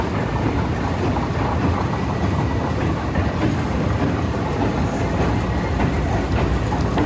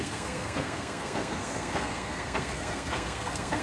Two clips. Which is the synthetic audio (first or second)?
second